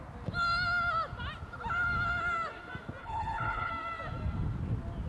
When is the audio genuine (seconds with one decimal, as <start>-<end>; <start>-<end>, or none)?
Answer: 0.0-3.0; 3.7-5.1